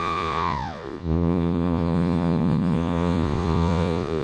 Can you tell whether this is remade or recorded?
remade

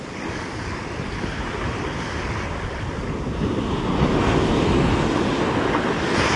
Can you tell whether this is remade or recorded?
recorded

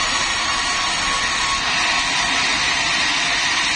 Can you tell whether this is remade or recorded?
recorded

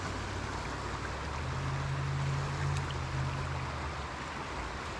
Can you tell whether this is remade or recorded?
recorded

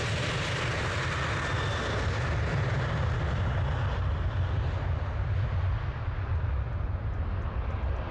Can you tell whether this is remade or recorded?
recorded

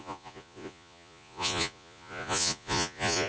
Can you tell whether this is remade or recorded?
remade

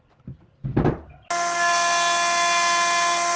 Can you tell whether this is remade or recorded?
recorded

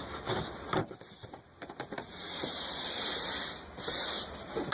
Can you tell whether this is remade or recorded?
recorded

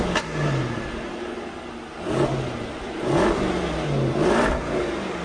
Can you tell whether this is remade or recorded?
recorded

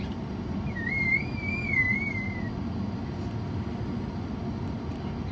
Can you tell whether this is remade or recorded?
recorded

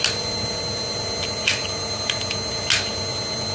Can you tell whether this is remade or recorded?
recorded